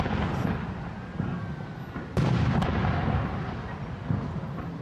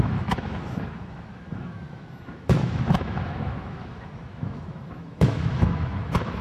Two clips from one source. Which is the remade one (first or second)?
second